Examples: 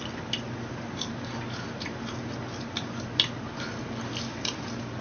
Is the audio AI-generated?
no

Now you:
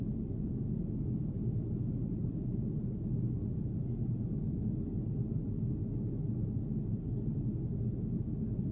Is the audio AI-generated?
no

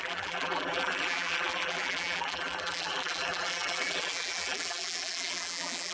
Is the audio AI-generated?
yes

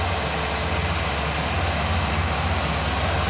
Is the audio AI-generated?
no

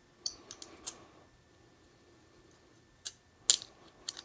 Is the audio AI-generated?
no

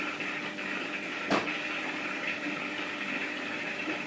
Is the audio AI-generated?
yes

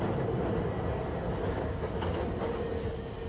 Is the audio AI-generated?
no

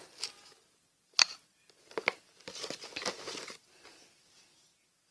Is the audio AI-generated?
no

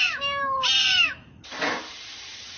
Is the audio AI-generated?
yes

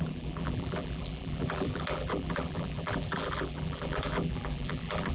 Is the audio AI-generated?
yes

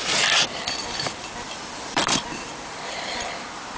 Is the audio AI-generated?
yes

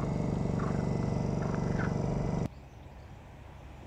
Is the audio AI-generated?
no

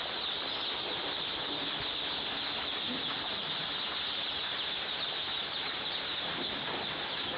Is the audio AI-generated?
no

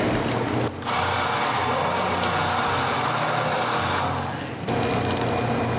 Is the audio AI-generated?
no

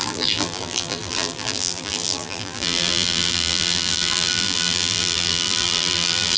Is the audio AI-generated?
yes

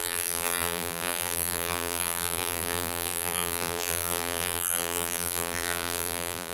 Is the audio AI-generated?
yes